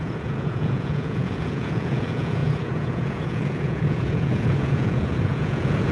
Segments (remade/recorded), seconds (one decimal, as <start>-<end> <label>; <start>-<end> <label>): 0.0-5.9 remade